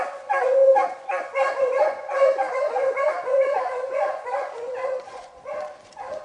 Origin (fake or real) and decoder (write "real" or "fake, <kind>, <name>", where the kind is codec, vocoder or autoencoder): fake, vocoder, Vocos